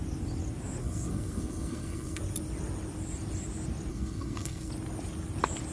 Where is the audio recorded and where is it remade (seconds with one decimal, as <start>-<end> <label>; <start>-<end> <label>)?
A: 0.0-0.8 recorded; 0.8-2.2 remade; 2.2-3.9 recorded; 3.9-4.7 remade; 4.7-5.7 recorded